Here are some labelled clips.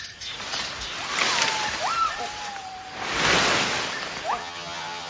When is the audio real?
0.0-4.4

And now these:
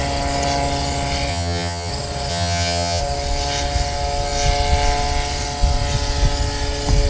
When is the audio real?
0.0-1.3; 1.9-2.3; 3.0-7.1

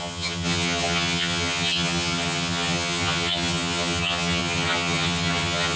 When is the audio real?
none

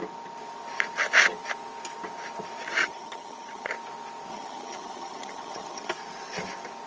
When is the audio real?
0.0-2.8; 3.7-4.3; 5.9-6.9

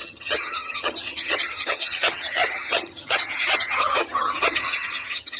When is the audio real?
none

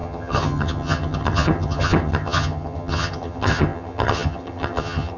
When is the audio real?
none

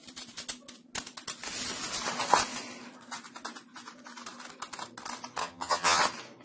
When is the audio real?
0.0-5.4; 6.0-6.4